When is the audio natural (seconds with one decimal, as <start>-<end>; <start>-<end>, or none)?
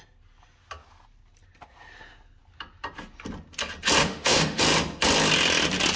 0.0-4.0; 4.6-6.0